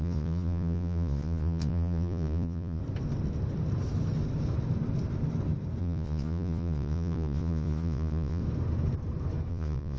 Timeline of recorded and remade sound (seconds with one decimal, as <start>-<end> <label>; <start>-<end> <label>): 0.0-2.8 remade; 2.8-5.8 recorded; 5.8-8.4 remade; 8.4-9.5 recorded; 9.5-10.0 remade